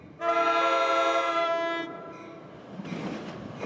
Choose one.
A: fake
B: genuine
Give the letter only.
B